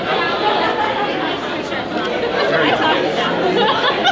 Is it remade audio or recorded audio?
recorded